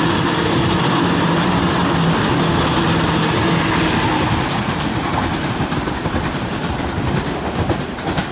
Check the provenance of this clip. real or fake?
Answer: real